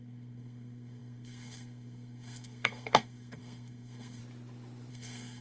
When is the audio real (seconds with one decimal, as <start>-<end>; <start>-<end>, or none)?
4.2-4.9